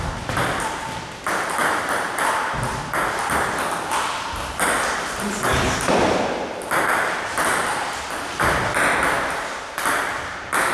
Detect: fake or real fake